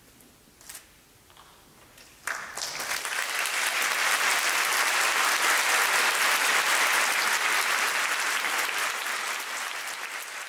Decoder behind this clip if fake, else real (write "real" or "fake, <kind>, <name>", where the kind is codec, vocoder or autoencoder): real